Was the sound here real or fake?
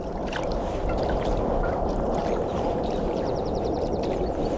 fake